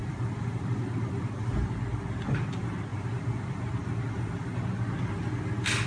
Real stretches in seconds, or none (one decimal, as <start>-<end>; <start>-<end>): 1.5-2.9; 4.1-5.9

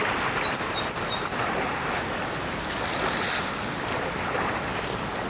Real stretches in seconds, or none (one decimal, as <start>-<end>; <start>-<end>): 0.0-5.3

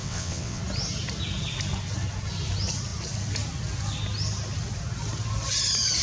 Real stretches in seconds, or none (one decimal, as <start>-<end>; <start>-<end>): 0.6-6.0

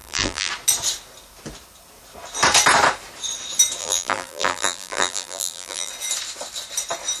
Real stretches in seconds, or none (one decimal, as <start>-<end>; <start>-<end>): 0.5-3.8; 5.9-7.2